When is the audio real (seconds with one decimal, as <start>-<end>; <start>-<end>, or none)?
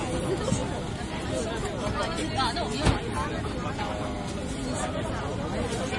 0.0-6.0